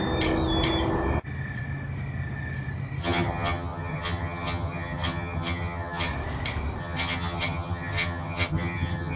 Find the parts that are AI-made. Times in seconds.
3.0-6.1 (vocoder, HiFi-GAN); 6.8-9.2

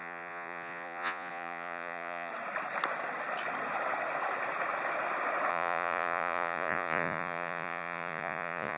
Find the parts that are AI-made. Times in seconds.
0.0-2.3 (vocoder, Vocos); 5.5-8.8

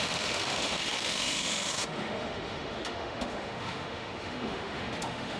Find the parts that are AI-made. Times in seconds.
0.0-5.4 (autoencoder, DAC-VAE)

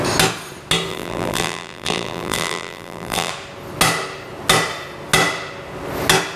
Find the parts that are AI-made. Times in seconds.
0.9-3.3 (vocoder, BigVGAN v2)

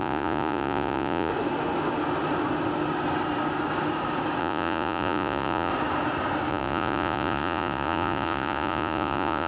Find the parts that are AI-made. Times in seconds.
0.0-1.3 (vocoder, Vocos); 4.4-5.7; 6.5-9.5

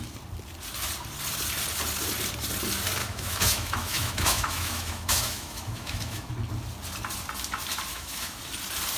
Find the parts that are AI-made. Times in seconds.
3.0-6.3 (autoencoder, DAC-VAE); 7.9-8.4

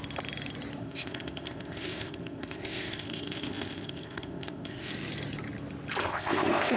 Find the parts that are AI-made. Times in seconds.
0.8-4.9 (codec, ZipCodec); 6.0-6.8

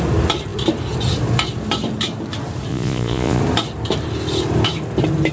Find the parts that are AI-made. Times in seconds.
2.7-3.4 (vocoder, Vocos)